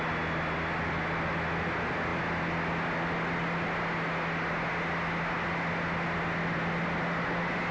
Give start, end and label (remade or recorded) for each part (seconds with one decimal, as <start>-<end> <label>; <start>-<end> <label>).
0.0-7.7 recorded